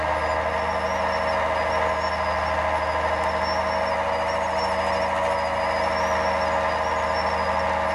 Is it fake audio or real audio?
real